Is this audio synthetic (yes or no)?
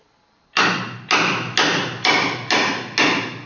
no